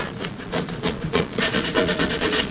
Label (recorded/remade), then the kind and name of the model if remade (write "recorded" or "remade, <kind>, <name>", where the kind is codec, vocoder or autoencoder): remade, vocoder, Vocos